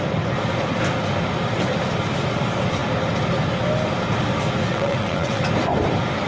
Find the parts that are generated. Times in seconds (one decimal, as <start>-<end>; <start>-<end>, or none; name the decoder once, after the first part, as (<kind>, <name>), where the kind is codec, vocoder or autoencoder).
4.7-5.4 (vocoder, WaveNeXt)